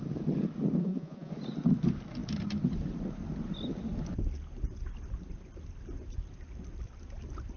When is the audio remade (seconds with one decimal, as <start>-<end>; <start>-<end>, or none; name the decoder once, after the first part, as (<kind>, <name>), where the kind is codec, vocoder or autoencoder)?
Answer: 0.8-1.3 (vocoder, Vocos)